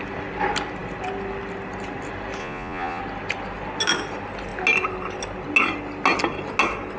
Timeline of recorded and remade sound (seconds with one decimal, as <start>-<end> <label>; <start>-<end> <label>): 0.0-2.4 recorded; 2.4-3.0 remade; 3.0-7.0 recorded